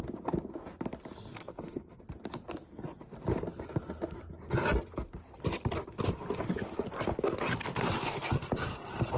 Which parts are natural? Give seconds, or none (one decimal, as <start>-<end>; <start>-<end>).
0.0-1.3; 2.0-9.2